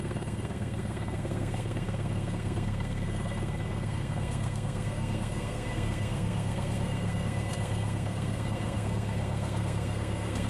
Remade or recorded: remade